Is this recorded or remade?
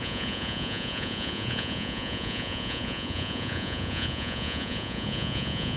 remade